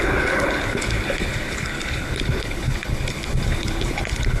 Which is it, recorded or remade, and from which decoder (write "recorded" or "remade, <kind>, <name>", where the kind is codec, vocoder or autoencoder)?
remade, codec, HILCodec